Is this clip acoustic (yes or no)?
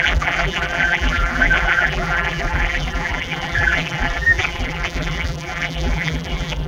no